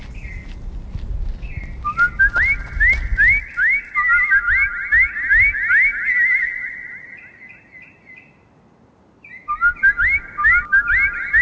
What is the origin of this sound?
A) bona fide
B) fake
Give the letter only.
A